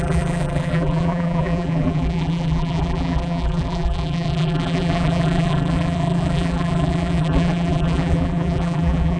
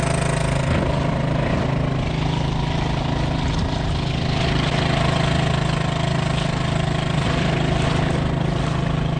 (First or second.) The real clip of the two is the second